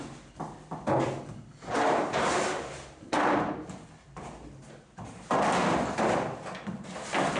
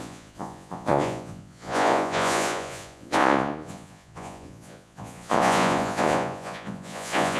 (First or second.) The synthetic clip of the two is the second